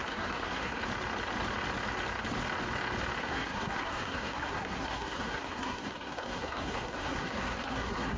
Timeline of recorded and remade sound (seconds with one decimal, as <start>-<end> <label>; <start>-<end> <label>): 0.0-0.8 remade; 0.8-3.2 recorded; 3.2-8.2 remade